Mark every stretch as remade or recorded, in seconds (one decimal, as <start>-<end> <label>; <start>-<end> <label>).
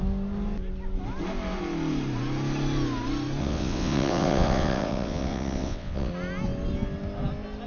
0.0-3.4 recorded; 3.4-6.1 remade; 6.1-7.7 recorded